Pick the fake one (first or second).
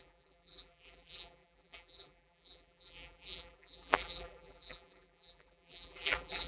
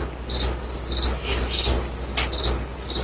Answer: first